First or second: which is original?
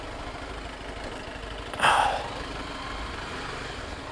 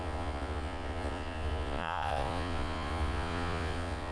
first